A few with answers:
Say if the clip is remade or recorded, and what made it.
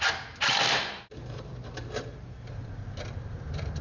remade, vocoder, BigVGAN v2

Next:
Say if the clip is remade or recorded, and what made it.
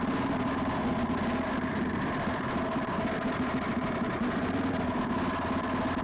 recorded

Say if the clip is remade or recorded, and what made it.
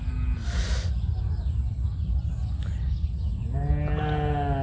recorded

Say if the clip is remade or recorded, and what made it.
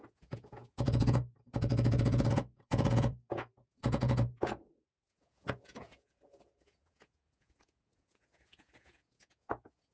remade, vocoder, Vocos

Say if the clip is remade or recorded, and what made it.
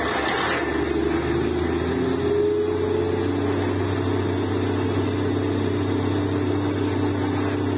recorded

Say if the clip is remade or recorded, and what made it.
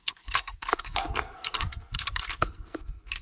remade, codec, SNAC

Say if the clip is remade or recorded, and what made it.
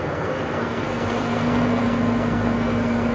remade, codec, SNAC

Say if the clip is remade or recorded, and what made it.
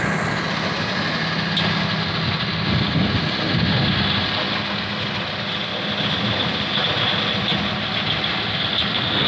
recorded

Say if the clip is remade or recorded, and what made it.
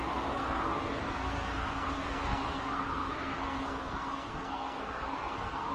remade, codec, SNAC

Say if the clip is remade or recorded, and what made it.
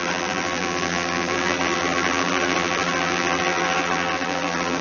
remade, vocoder, BigVGAN v2